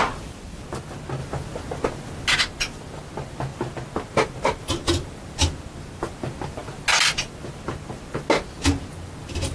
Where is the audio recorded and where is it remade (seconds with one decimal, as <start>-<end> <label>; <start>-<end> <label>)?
0.0-9.5 recorded